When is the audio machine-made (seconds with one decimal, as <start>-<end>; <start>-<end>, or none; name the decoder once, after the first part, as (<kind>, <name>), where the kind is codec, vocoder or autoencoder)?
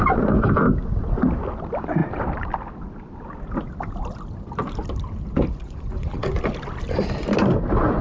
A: 5.6-6.4 (vocoder, Vocos)